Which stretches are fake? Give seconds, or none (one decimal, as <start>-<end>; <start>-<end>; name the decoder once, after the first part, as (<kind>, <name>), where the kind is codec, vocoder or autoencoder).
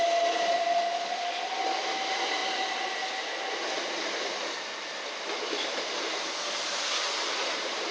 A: none